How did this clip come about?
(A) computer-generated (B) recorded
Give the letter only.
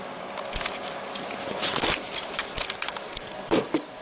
A